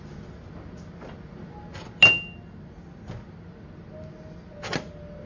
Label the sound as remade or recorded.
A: recorded